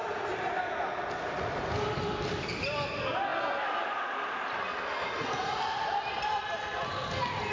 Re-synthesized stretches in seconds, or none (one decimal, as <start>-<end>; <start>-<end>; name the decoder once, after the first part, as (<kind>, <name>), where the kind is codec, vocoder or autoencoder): none